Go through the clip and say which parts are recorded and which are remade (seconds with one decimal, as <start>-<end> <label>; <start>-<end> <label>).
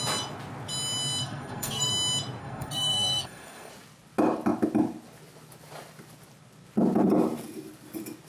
0.0-1.2 recorded; 1.2-1.9 remade; 1.9-2.4 recorded; 2.4-3.7 remade; 3.7-8.3 recorded